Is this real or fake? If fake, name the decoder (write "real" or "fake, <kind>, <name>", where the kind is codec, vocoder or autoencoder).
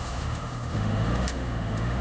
fake, autoencoder, DAC-VAE